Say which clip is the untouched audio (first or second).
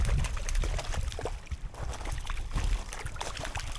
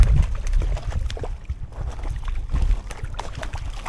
second